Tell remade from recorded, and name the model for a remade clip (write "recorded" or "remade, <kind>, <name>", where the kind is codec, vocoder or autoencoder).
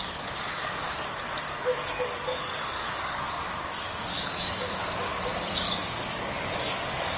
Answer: remade, codec, DAC